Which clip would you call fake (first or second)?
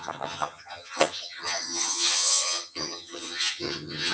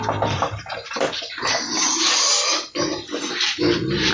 first